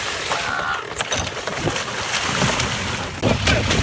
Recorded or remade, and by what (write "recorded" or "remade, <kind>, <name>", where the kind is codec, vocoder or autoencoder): recorded